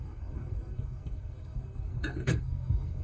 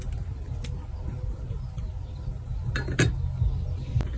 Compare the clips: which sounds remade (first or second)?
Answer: first